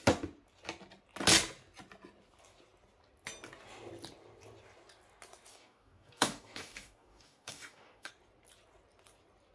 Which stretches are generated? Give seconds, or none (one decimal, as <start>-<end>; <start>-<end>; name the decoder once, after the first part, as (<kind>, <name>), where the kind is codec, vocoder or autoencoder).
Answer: 5.5-8.1 (codec, DAC)